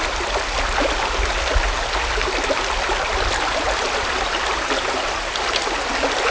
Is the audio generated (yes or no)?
no